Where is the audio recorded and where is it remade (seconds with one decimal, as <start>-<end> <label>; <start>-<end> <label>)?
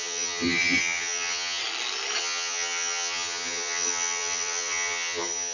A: 0.0-1.6 remade; 1.6-2.2 recorded; 2.2-5.5 remade